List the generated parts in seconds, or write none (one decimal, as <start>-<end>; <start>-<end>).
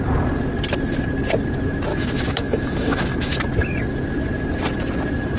1.9-3.4